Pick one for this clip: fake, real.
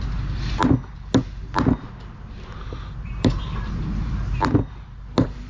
real